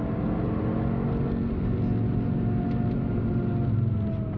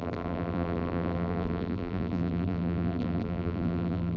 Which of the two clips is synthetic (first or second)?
second